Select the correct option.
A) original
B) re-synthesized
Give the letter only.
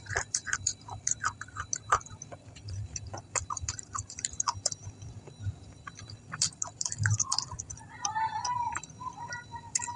B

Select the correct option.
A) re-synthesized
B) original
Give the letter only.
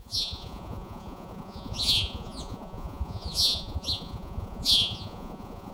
A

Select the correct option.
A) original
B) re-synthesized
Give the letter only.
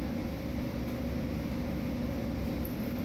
A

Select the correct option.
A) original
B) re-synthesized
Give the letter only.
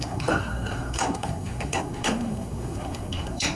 B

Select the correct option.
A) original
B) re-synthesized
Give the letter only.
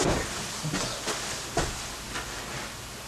A